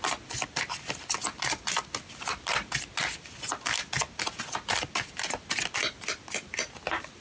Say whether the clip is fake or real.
real